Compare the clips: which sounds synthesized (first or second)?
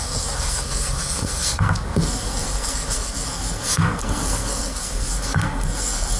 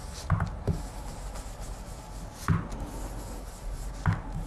first